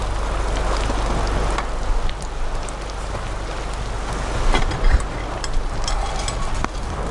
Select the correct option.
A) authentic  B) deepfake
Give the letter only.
A